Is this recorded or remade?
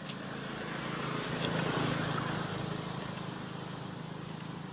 recorded